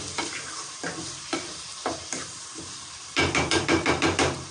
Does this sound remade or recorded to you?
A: remade